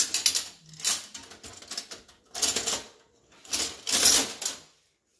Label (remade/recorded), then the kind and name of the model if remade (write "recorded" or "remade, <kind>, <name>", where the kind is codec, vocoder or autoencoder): recorded